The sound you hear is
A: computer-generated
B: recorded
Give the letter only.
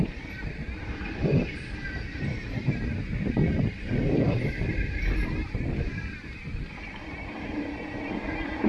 B